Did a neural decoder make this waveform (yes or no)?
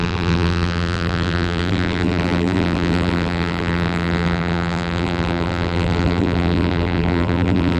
yes